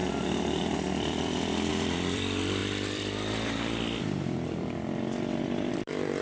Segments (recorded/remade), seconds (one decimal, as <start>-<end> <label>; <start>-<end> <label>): 0.0-6.2 remade